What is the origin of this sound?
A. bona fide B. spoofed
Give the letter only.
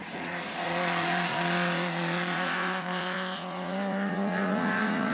B